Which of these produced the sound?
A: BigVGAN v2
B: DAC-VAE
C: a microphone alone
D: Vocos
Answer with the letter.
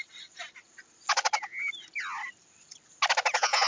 C